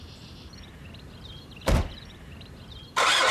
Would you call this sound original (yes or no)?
no